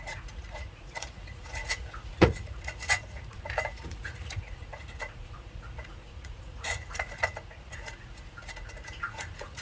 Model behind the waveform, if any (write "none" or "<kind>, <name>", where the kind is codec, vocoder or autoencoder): vocoder, Vocos